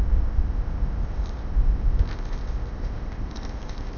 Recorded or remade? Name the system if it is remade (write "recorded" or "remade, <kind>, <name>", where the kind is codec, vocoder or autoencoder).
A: remade, codec, ZipCodec